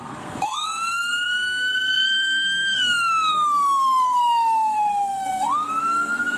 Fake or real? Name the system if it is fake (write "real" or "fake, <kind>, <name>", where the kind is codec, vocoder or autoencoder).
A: fake, codec, SNAC